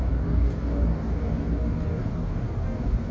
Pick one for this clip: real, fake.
fake